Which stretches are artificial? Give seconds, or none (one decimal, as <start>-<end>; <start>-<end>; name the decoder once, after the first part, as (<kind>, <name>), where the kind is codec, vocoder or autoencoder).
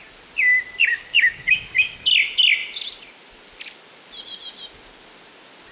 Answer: 0.9-2.0 (codec, DAC)